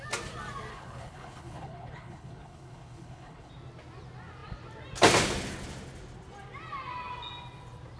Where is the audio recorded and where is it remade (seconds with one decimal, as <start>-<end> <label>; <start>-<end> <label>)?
0.0-0.7 recorded; 0.7-3.5 remade; 3.5-8.0 recorded